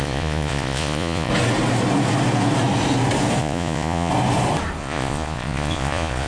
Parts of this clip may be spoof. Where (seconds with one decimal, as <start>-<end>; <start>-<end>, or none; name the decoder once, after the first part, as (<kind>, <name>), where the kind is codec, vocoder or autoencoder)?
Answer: 0.0-1.3 (vocoder, Vocos); 3.4-4.1; 4.8-6.3